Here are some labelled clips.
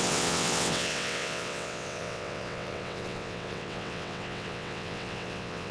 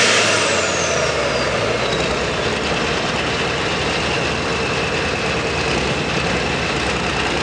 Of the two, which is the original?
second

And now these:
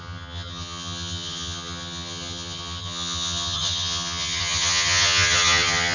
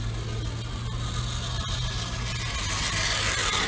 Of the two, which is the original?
second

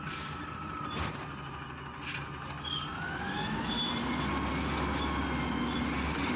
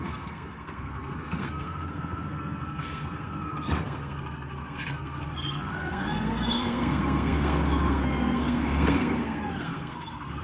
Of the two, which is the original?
first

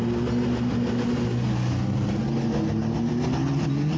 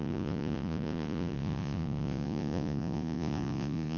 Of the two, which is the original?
first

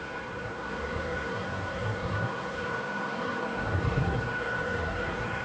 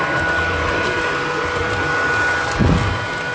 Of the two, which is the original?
second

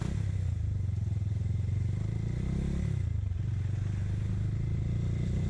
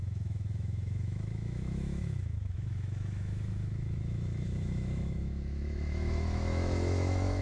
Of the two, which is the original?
first